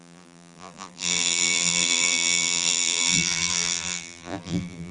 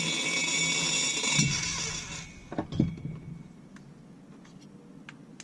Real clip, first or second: second